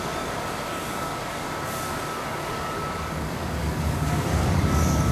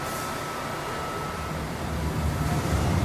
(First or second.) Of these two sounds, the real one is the second